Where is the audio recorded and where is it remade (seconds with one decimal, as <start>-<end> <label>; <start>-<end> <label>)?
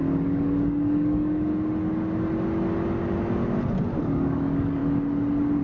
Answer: 0.0-1.5 remade; 1.5-4.0 recorded; 4.0-4.8 remade; 4.8-5.6 recorded